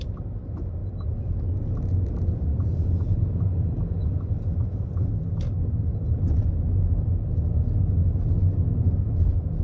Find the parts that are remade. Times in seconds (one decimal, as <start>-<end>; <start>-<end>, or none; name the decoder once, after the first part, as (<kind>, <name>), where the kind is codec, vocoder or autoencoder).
2.5-4.9 (vocoder, Vocos)